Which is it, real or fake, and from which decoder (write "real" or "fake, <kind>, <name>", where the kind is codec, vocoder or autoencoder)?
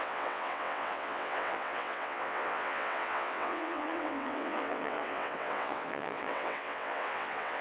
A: fake, vocoder, WaveNeXt